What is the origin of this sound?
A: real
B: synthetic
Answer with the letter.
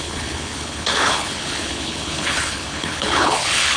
B